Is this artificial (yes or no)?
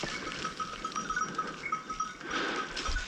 no